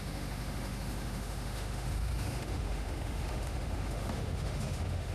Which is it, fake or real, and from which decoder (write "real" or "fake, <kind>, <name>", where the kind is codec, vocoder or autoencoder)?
fake, autoencoder, DAC-VAE